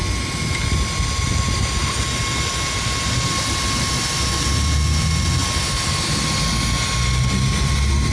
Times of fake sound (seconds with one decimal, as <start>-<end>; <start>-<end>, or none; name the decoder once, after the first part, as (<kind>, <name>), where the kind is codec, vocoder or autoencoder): none